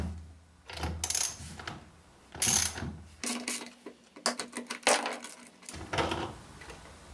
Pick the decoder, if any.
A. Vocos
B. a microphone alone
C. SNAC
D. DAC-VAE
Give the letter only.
B